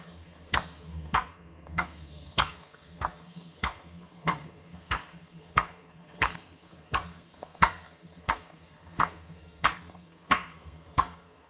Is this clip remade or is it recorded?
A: remade